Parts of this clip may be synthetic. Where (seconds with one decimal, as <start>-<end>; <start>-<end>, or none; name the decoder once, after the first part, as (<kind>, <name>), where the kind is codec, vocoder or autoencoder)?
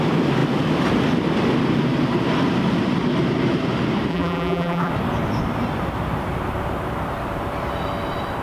4.1-4.9 (vocoder, BigVGAN v2)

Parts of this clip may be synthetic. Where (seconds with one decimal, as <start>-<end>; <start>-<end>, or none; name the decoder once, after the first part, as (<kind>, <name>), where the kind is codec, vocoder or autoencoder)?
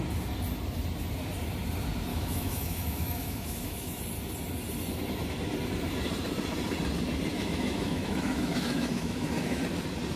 2.1-4.0 (autoencoder, DAC-VAE); 7.3-9.6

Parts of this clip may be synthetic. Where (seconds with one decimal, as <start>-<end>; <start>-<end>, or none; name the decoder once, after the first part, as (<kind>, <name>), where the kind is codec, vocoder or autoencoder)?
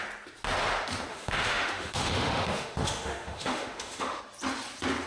1.1-4.2 (autoencoder, DAC-VAE)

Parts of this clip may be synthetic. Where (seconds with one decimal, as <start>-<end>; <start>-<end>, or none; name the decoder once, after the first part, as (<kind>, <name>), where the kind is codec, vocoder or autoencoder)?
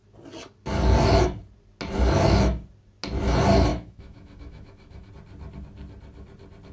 3.7-5.1 (autoencoder, DAC-VAE)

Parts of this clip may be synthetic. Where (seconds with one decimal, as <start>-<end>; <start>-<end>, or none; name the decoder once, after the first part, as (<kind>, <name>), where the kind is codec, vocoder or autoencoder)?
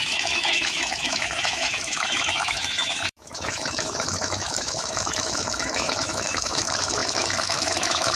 0.0-8.2 (autoencoder, DAC-VAE)